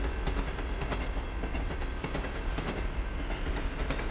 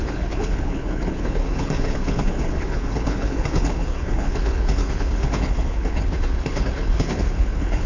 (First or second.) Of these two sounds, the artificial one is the second